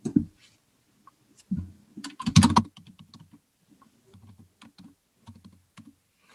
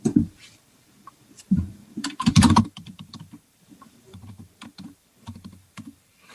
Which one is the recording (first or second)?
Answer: first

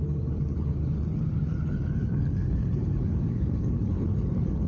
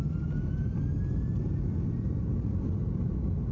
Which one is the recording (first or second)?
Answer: second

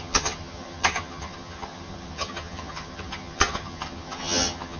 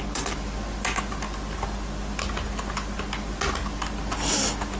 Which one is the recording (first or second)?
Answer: second